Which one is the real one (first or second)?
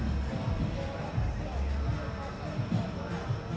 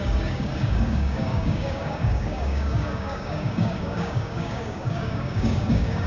first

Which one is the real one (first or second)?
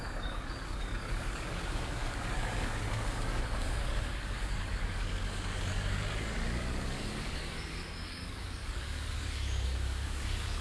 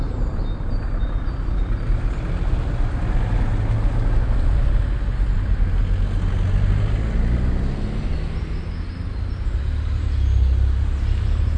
second